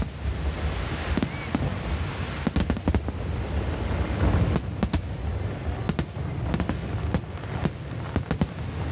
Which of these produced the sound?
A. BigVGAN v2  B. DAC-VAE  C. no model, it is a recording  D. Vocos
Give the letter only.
C